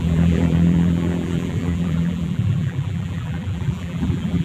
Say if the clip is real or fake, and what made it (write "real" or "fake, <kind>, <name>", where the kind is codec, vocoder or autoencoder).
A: fake, vocoder, BigVGAN v2